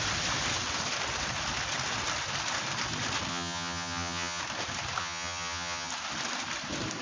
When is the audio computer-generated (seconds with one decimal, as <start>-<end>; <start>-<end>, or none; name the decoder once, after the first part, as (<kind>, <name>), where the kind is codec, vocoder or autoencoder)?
3.3-4.4 (vocoder, HiFi-GAN); 5.0-5.9